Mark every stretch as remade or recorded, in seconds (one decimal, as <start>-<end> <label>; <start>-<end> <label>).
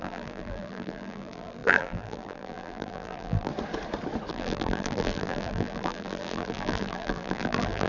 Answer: 0.0-3.5 remade; 3.5-4.3 recorded; 4.3-7.9 remade